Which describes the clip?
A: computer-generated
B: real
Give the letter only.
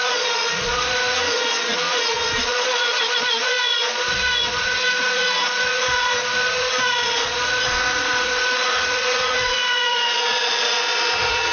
A